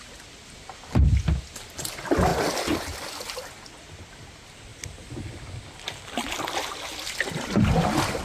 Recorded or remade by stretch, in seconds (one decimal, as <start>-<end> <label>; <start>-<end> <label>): 0.0-8.2 recorded